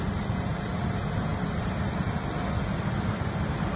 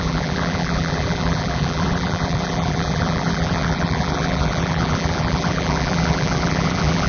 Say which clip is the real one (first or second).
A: first